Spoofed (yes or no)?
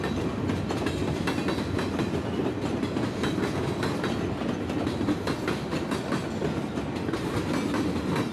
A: no